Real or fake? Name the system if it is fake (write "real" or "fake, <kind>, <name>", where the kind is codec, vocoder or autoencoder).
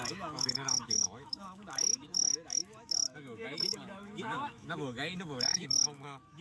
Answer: fake, autoencoder, DAC-VAE